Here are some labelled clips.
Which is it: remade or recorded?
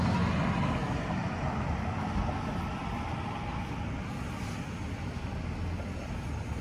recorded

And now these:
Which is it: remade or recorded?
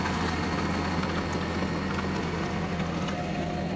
recorded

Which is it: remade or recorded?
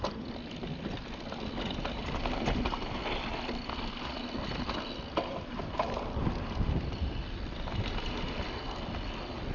recorded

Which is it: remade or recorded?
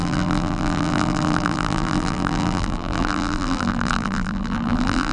remade